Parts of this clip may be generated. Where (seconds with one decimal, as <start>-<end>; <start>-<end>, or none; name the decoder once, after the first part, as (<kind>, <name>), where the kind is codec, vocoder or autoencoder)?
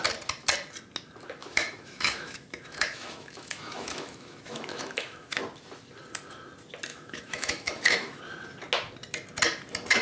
1.4-5.4 (autoencoder, DAC-VAE); 6.9-8.2